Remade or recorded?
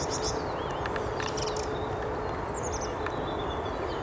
recorded